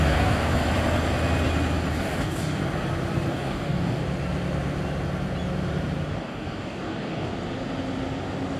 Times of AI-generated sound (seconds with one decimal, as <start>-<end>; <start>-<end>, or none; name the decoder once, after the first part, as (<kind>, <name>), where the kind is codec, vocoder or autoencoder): 0.0-0.5 (codec, DAC); 1.9-2.6; 3.3-4.0; 6.2-7.3